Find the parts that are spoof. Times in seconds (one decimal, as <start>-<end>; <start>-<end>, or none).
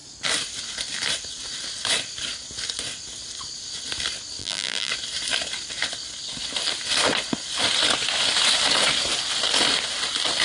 4.4-4.9